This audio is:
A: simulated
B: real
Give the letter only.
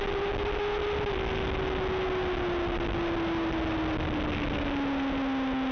B